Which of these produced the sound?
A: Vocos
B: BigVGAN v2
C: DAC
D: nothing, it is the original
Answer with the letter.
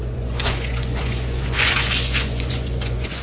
A